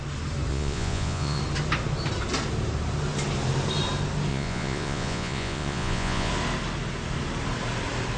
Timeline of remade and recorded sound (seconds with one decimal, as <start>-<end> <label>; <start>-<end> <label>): 0.0-0.5 recorded; 0.5-1.4 remade; 1.4-4.3 recorded; 4.3-6.3 remade; 6.3-8.2 recorded